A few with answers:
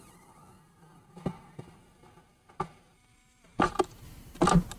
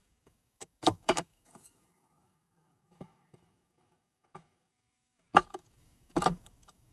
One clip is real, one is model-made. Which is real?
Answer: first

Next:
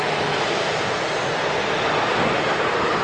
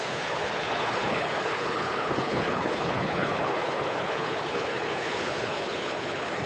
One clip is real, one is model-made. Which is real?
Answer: first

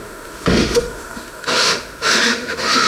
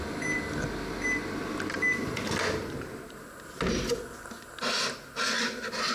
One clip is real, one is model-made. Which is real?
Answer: second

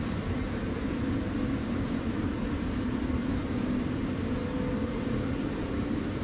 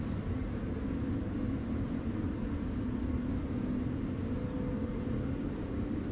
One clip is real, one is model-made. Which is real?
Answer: second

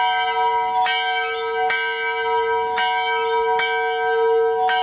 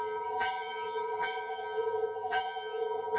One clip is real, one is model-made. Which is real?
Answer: first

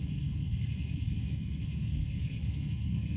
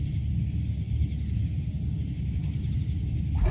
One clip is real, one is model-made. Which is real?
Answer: second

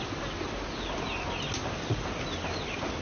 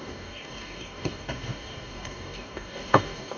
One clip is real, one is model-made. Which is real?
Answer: first